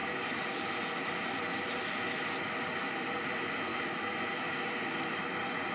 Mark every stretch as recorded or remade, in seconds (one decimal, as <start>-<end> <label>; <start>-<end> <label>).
0.0-3.7 recorded; 3.7-4.5 remade; 4.5-5.7 recorded

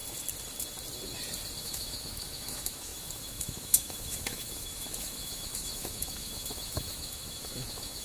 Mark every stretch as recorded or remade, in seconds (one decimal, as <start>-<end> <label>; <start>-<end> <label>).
0.0-1.6 recorded; 1.6-8.0 remade

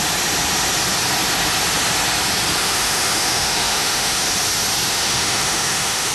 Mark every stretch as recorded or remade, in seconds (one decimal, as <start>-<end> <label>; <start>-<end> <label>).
0.0-2.6 recorded; 2.6-4.2 remade; 4.2-4.9 recorded; 4.9-6.1 remade

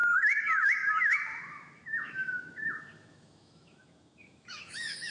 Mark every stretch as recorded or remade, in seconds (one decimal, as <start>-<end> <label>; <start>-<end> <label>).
0.0-5.1 remade

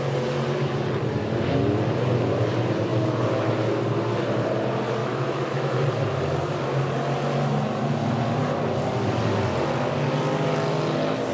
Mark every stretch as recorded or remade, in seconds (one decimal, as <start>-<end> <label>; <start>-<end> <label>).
0.0-5.0 recorded; 5.0-5.8 remade; 5.8-11.3 recorded